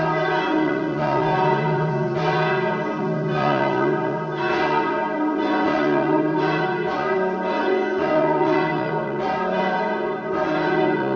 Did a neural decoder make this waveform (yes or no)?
yes